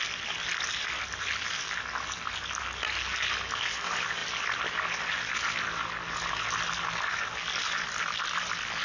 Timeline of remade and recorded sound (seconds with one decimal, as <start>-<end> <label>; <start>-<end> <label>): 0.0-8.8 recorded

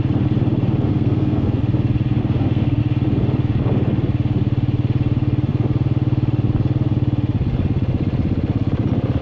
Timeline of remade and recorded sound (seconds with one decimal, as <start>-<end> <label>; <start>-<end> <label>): 0.0-0.9 recorded; 0.9-1.6 remade; 1.6-2.2 recorded; 2.2-2.8 remade; 2.8-9.2 recorded

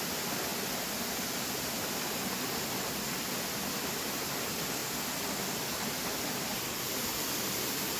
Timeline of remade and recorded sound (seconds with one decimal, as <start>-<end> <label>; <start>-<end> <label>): 0.0-8.0 recorded

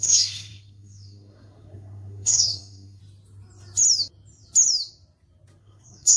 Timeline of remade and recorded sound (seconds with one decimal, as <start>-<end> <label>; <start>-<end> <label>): 0.0-3.0 remade; 3.0-5.6 recorded; 5.6-6.2 remade